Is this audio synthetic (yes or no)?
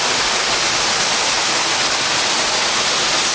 no